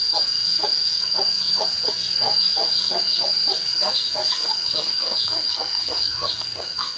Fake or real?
fake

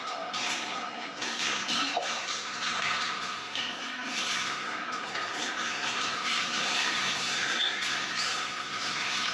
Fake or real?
fake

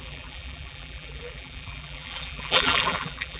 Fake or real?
fake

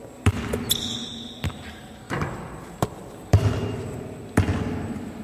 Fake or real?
real